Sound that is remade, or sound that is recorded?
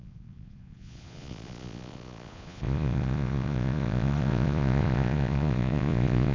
remade